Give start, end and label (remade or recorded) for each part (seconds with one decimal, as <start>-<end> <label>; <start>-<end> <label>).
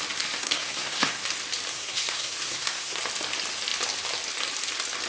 0.0-0.4 recorded; 0.4-1.2 remade; 1.2-1.7 recorded; 1.7-3.0 remade; 3.0-5.1 recorded